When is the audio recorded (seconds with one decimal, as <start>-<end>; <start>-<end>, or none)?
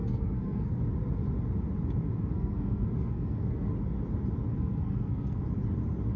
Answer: 0.8-2.2; 3.7-4.5; 5.4-6.2